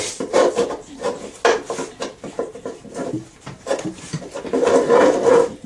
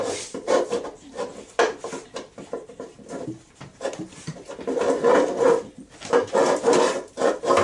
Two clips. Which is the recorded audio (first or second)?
first